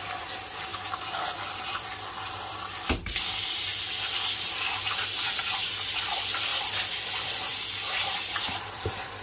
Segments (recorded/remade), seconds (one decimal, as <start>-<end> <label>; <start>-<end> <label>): 0.0-3.7 remade; 3.7-4.9 recorded; 4.9-6.5 remade; 6.5-7.1 recorded; 7.1-9.2 remade